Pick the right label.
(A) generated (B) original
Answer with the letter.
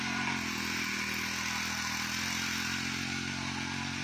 B